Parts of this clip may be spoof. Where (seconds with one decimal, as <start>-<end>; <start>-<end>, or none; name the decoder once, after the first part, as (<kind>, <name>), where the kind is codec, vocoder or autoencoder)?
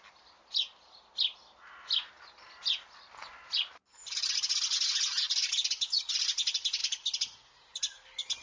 none